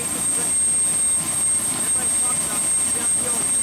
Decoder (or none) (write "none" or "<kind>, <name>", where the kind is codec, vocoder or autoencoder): none